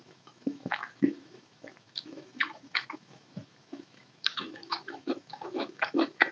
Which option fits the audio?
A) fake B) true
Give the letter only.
A